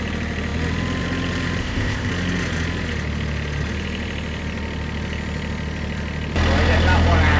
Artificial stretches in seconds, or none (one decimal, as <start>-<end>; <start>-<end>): 1.6-2.1